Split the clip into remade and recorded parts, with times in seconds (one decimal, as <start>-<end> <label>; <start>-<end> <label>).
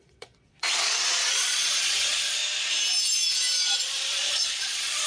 0.0-2.4 remade; 2.4-3.8 recorded; 3.8-5.1 remade